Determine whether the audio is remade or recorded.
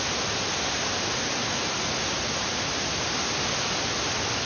recorded